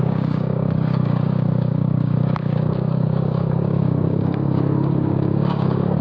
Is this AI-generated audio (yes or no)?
yes